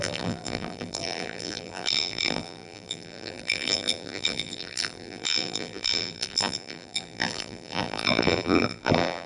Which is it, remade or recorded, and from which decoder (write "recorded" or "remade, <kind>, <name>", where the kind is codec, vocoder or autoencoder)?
remade, vocoder, BigVGAN v2